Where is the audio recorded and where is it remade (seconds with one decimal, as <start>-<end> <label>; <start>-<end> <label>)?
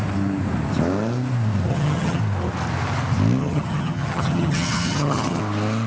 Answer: 0.0-1.7 recorded; 1.7-2.2 remade; 2.2-3.4 recorded; 3.4-5.4 remade; 5.4-5.9 recorded